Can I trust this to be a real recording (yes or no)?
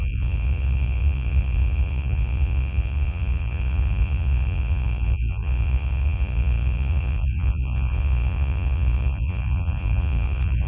no